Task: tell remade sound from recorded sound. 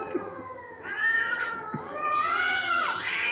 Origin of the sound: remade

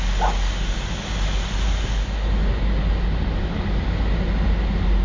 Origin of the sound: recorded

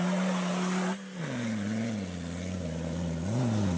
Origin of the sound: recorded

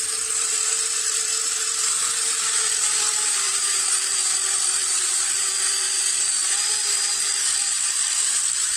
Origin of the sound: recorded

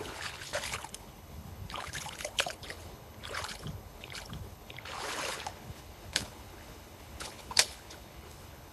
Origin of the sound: remade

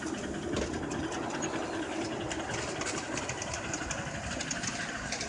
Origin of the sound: recorded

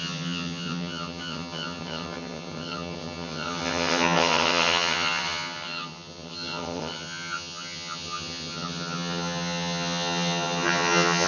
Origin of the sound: remade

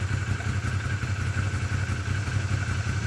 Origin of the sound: recorded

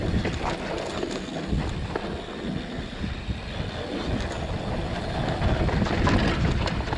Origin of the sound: recorded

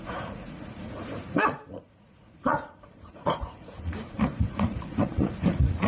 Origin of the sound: remade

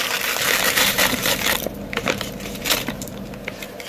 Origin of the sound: remade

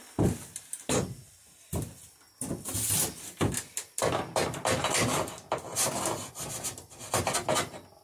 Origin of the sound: recorded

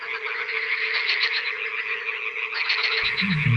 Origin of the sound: recorded